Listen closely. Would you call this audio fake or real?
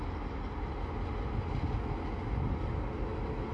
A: real